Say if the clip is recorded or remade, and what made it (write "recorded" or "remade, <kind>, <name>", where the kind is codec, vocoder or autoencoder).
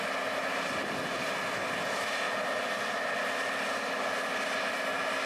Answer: recorded